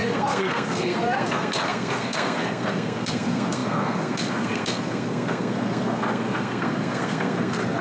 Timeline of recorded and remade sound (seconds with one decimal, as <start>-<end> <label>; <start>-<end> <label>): 0.0-7.8 remade